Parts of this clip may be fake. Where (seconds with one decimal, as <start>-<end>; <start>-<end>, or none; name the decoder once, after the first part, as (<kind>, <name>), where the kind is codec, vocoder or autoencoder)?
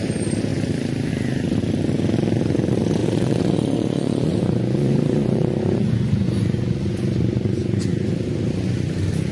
3.0-8.1 (vocoder, Vocos)